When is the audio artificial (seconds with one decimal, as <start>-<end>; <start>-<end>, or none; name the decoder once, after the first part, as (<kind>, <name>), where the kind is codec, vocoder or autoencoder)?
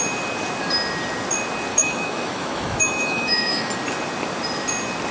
1.7-3.7 (autoencoder, DAC-VAE)